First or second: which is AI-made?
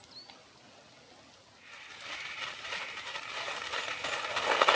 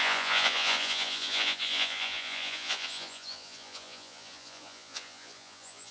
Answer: second